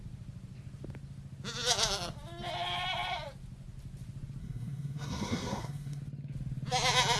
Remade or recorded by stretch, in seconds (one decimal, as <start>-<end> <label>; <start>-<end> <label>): 0.0-4.4 recorded; 4.4-6.0 remade; 6.0-7.2 recorded